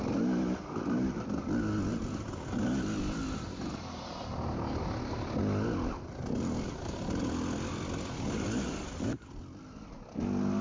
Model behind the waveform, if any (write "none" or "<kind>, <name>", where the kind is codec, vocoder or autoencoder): none